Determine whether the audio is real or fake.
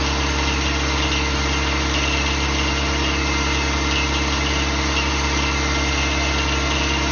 real